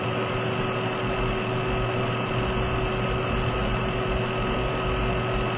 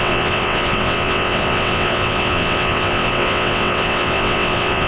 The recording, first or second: first